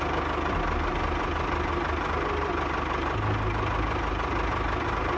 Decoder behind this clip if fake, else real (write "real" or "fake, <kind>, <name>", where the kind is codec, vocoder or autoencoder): real